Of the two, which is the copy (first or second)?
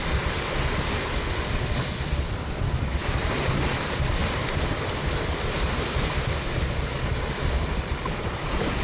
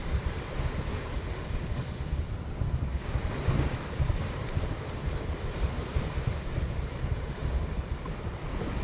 second